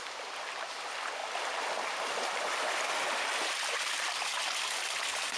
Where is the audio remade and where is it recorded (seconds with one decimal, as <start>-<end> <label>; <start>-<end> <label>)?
0.0-5.4 recorded